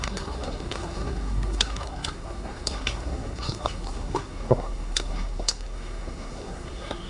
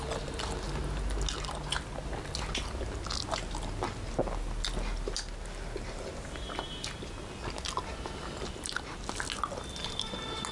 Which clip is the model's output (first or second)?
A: first